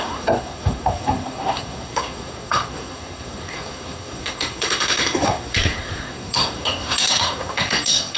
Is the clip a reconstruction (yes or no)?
yes